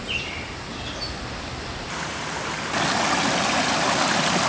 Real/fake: real